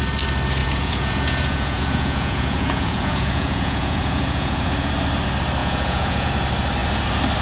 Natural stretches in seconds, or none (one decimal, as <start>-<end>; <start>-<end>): 0.0-0.6; 4.9-5.6; 6.3-7.4